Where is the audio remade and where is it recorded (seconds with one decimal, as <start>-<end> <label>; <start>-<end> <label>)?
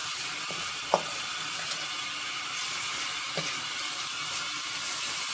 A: 0.0-5.3 recorded